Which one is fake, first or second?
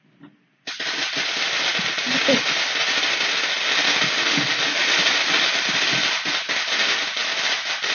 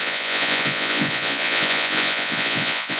second